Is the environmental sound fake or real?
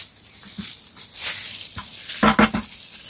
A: real